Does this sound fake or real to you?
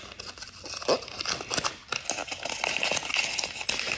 real